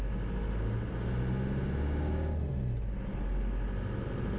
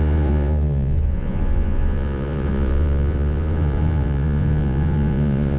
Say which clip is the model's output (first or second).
second